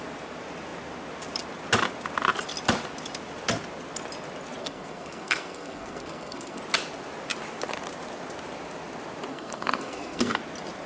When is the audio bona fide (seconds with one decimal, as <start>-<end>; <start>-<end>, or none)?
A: 0.0-4.6; 6.6-9.3; 10.4-10.9

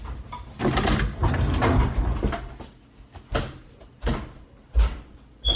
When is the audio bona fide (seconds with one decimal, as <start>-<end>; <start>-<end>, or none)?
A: 0.0-5.6

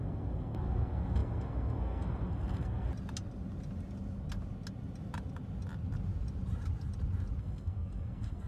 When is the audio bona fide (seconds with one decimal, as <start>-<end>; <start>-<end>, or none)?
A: 2.9-7.4

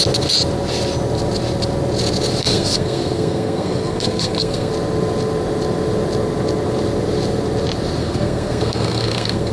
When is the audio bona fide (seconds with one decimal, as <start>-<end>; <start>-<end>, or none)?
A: 0.0-2.4; 4.7-8.0

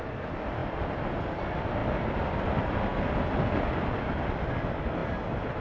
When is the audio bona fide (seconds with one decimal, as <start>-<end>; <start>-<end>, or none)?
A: 0.0-5.6

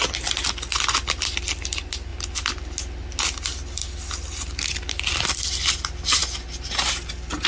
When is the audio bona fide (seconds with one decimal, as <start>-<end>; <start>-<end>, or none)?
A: 0.0-7.5

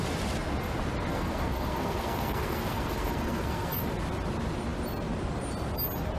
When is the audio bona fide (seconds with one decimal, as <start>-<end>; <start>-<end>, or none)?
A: 0.0-1.1; 3.8-6.2

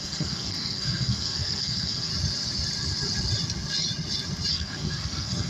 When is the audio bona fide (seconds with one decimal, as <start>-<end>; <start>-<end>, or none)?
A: 2.1-4.5